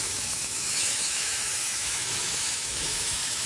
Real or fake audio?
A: fake